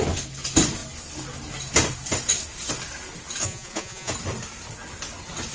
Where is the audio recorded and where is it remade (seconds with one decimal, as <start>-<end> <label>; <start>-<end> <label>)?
0.0-3.4 recorded; 3.4-4.1 remade; 4.1-5.5 recorded